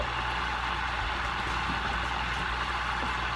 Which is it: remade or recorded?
recorded